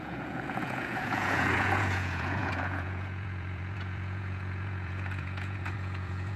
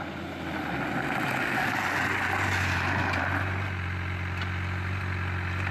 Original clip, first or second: second